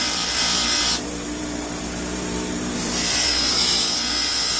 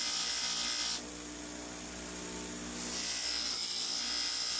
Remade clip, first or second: first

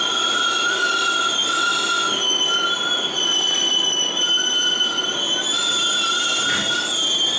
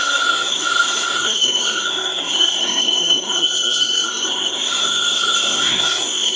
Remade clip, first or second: second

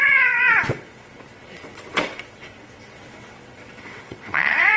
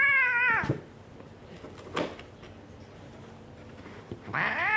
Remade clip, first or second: first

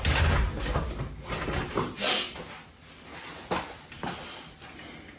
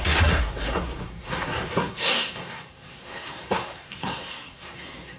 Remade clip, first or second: second